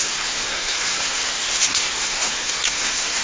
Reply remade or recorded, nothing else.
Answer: remade